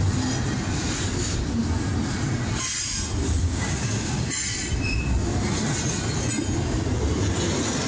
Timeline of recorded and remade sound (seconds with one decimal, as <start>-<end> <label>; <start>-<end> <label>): 0.0-3.4 recorded; 3.4-4.3 remade; 4.3-7.9 recorded